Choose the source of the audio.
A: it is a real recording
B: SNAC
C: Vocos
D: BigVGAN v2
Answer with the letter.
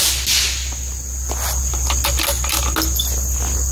A